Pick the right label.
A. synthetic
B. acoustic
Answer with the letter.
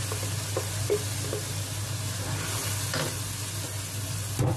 B